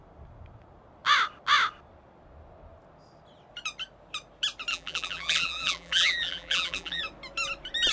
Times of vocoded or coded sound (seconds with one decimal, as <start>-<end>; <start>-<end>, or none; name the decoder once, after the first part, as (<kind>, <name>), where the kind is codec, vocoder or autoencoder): 4.7-7.0 (vocoder, BigVGAN v2)